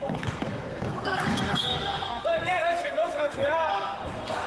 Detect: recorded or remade remade